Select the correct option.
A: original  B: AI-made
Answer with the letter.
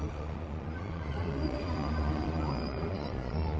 B